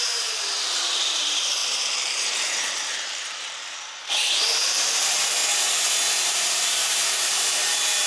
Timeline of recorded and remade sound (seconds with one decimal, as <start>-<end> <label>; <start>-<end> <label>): 0.0-5.4 remade; 5.4-6.1 recorded; 6.1-8.1 remade